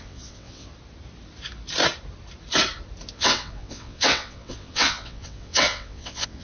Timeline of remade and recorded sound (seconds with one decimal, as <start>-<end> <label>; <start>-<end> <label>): 0.0-0.7 remade; 0.7-3.1 recorded; 3.1-6.4 remade